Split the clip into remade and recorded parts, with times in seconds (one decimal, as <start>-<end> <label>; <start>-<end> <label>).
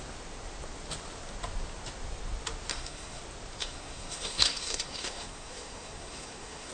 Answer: 0.0-2.7 recorded; 2.7-3.2 remade; 3.2-3.6 recorded; 3.6-6.7 remade